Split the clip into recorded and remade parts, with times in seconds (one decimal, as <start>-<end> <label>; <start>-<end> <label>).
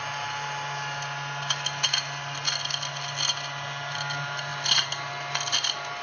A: 0.0-6.0 recorded